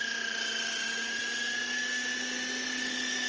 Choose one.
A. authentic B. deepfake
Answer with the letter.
A